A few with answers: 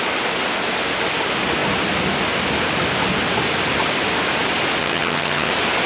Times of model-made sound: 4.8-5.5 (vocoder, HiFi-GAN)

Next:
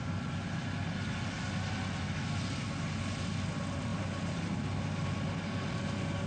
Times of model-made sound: 3.9-4.5 (vocoder, BigVGAN v2)

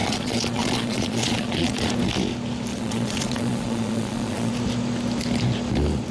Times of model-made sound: 0.0-1.9 (vocoder, Vocos); 2.7-4.5

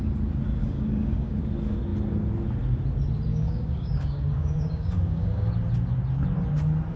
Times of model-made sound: 0.6-1.4 (codec, DAC); 3.3-5.5

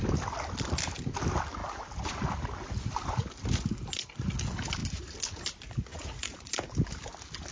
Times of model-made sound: 5.9-6.5 (vocoder, Vocos)

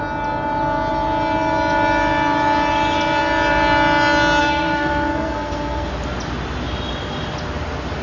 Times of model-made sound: 4.4-5.9 (codec, SNAC)

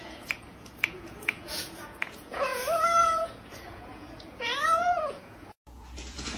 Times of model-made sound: 0.0-6.4 (vocoder, Vocos)